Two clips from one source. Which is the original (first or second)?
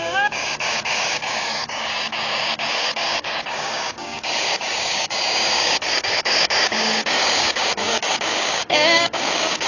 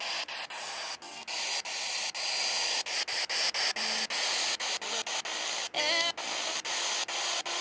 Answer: second